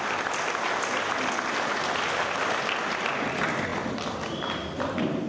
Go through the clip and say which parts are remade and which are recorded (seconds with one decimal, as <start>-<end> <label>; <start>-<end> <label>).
0.0-5.3 recorded